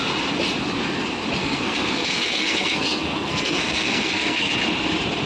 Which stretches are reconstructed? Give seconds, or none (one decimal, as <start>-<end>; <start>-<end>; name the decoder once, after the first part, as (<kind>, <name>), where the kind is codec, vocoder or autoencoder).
1.4-4.6 (codec, SNAC)